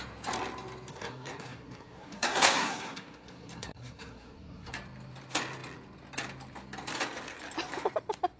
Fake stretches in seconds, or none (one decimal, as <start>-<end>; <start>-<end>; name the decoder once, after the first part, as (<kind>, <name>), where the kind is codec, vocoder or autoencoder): 0.9-4.7 (codec, SNAC)